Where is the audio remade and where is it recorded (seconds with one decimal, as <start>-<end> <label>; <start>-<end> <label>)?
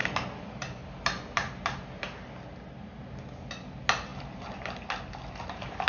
0.0-5.9 recorded